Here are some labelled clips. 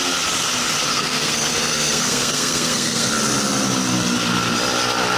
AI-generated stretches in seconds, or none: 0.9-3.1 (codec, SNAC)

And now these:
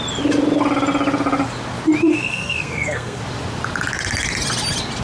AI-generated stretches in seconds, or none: 2.1-3.2 (codec, SNAC)

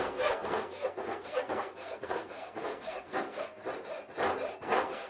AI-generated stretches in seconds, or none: 0.0-3.6 (codec, SNAC); 4.5-5.1

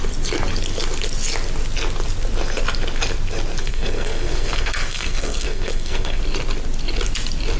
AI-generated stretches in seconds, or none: 3.6-6.2 (codec, SNAC)

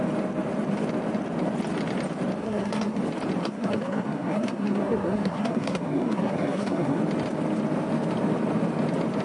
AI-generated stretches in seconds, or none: 2.4-3.0 (codec, SNAC); 3.4-7.0

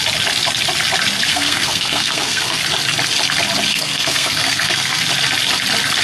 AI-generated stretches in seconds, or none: 1.3-2.6 (codec, SNAC); 3.7-5.0